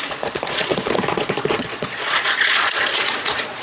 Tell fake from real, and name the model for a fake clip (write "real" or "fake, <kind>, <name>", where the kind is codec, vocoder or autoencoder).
fake, vocoder, Vocos